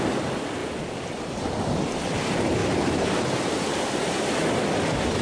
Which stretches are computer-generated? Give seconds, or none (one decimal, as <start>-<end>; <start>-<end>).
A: none